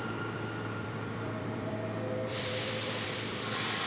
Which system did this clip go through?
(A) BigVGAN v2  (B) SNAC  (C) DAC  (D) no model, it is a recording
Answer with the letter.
A